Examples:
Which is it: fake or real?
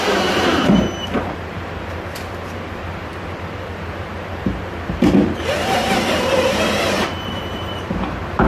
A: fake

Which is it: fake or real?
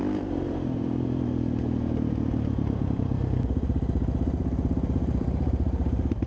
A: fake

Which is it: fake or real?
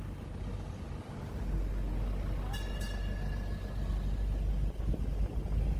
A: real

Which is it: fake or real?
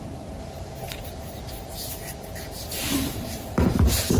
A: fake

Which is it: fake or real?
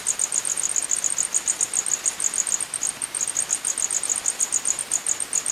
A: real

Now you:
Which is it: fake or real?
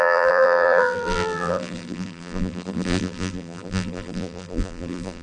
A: fake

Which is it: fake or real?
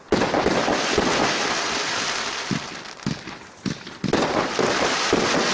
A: fake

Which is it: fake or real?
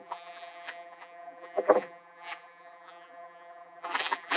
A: fake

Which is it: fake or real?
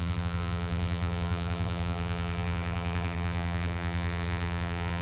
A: fake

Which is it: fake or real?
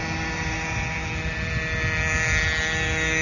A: real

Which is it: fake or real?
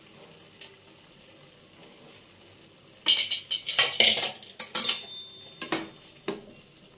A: real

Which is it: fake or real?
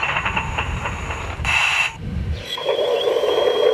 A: fake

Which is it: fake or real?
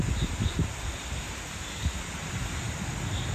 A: real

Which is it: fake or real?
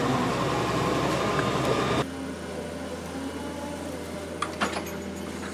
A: real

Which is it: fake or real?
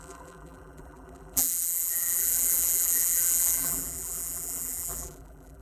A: fake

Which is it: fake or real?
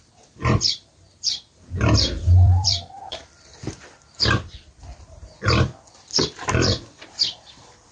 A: fake